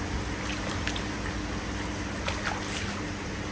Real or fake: real